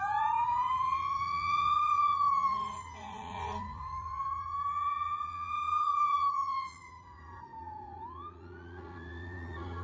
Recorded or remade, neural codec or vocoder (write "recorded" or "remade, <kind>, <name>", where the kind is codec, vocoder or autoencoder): remade, vocoder, Vocos